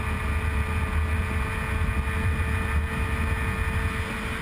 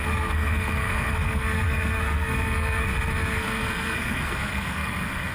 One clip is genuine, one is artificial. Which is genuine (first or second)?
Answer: first